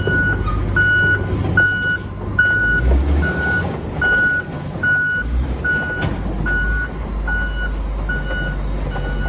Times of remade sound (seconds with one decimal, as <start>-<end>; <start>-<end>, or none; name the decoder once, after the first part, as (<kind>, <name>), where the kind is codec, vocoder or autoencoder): 2.6-3.9 (codec, DAC)